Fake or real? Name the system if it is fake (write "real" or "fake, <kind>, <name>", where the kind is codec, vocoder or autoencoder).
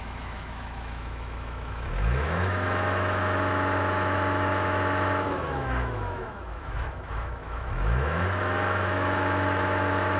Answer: fake, autoencoder, DAC-VAE